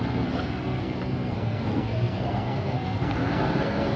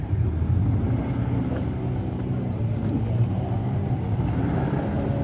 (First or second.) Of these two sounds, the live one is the second